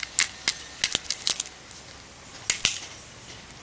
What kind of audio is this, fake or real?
real